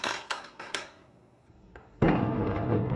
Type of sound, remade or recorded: remade